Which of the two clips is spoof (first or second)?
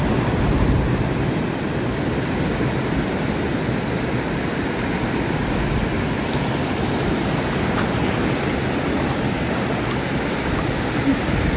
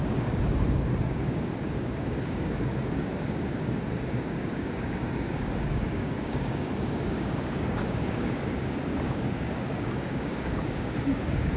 second